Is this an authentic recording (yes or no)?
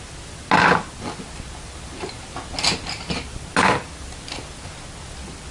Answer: yes